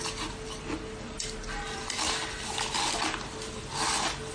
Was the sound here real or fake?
real